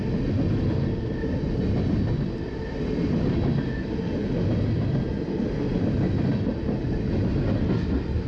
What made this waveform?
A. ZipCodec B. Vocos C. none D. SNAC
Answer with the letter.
C